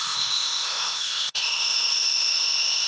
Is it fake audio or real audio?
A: fake